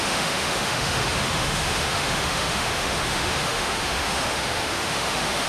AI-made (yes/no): yes